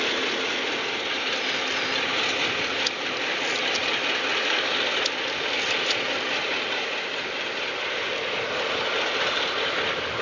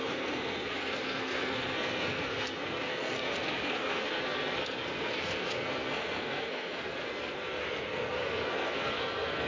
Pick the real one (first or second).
first